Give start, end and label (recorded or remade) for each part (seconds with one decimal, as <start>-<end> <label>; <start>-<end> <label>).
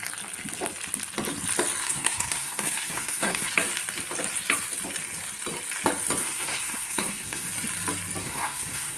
0.0-1.8 recorded; 1.8-3.5 remade; 3.5-6.2 recorded; 6.2-7.5 remade; 7.5-8.2 recorded; 8.2-9.0 remade